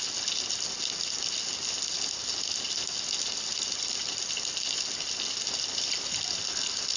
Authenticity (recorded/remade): recorded